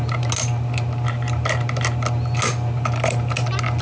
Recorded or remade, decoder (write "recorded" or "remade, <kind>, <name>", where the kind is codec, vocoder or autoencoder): recorded